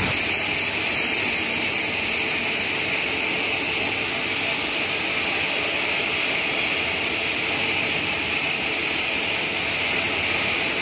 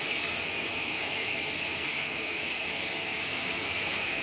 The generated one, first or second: second